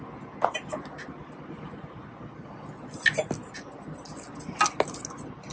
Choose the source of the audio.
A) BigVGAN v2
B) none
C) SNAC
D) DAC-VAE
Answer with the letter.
B